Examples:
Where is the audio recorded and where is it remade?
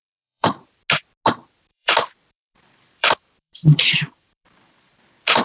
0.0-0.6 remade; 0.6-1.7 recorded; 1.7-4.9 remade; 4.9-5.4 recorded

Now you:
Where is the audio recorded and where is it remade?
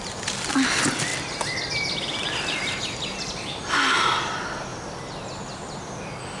0.0-6.4 recorded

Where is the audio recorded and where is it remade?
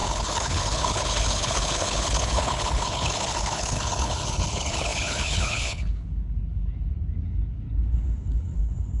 0.0-9.0 remade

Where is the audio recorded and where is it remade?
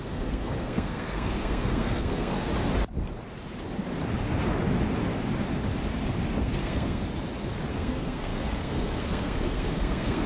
0.0-2.5 remade; 2.5-6.4 recorded; 6.4-7.0 remade; 7.0-7.7 recorded; 7.7-10.3 remade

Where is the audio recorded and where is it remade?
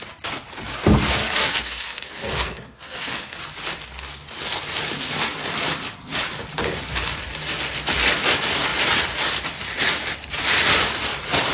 0.0-1.2 recorded; 1.2-3.4 remade; 3.4-11.5 recorded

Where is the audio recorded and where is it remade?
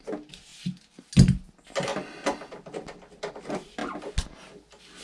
0.0-5.0 recorded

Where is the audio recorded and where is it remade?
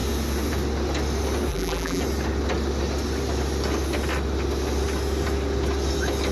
0.0-1.5 recorded; 1.5-2.0 remade; 2.0-6.3 recorded